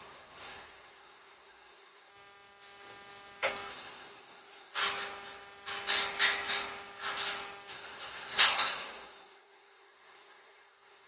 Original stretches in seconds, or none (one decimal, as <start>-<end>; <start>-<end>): 2.1-3.7; 4.8-7.7